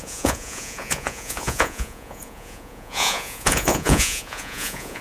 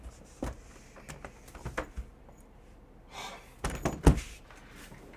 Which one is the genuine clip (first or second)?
second